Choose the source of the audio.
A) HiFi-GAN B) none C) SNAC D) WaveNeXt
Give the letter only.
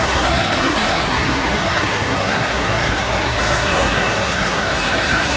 C